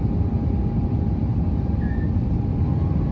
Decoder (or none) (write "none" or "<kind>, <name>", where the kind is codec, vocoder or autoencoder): none